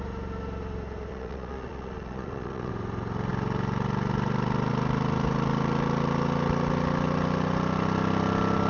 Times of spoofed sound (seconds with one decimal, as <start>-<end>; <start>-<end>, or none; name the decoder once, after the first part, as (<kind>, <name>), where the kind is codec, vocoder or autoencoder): 1.1-2.7 (vocoder, Vocos)